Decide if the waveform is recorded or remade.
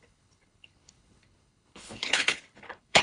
remade